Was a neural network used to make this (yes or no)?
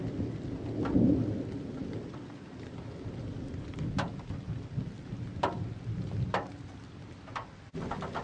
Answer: no